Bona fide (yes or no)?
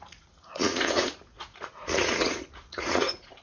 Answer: no